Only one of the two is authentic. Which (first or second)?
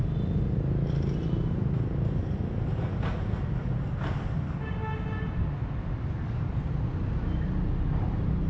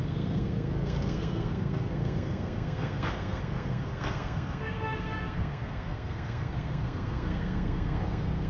first